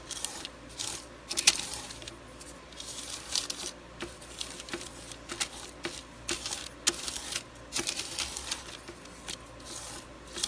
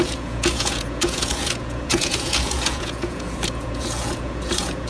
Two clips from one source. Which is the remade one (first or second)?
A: second